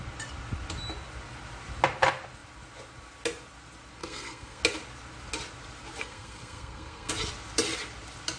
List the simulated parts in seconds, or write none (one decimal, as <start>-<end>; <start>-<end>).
4.0-4.6; 6.0-7.1